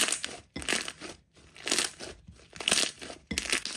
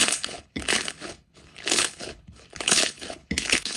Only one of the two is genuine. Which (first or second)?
first